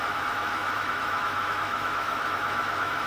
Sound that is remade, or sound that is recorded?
remade